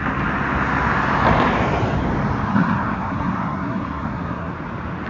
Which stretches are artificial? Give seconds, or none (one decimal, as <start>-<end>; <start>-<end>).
2.5-4.5